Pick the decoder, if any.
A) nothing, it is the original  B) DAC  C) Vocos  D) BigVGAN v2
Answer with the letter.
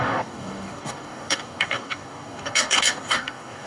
B